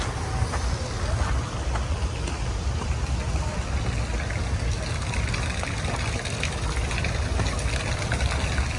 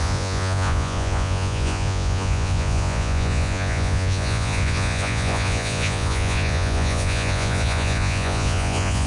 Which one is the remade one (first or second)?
second